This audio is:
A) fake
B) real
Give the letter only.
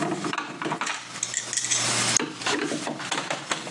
B